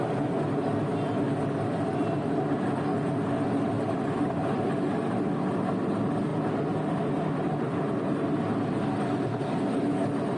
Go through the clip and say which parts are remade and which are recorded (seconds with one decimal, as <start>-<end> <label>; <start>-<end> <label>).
0.0-10.4 recorded